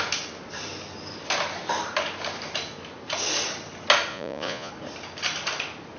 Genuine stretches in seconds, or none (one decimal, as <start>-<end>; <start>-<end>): 0.0-4.1; 4.7-6.0